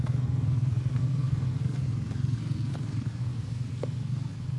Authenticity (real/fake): fake